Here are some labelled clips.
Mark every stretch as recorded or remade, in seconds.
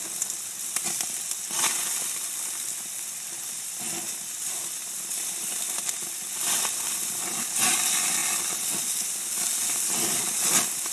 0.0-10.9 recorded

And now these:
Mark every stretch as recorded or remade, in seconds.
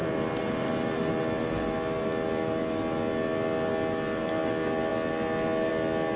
0.0-6.2 recorded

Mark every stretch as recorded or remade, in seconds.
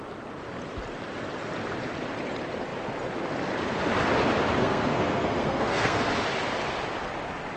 0.0-4.6 recorded; 4.6-6.1 remade; 6.1-7.6 recorded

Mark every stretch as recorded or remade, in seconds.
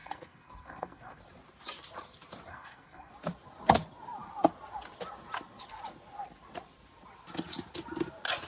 0.0-1.2 remade; 1.2-2.5 recorded; 2.5-3.1 remade; 3.1-8.5 recorded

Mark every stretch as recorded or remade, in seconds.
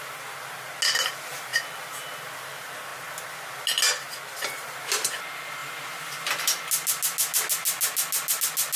0.0-8.8 recorded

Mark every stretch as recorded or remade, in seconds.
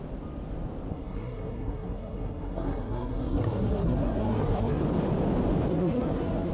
0.0-0.9 recorded; 0.9-4.8 remade; 4.8-5.7 recorded; 5.7-6.5 remade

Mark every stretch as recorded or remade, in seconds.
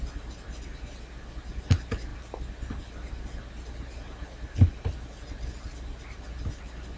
0.0-7.0 recorded